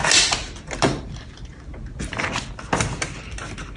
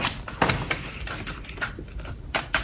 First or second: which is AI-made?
second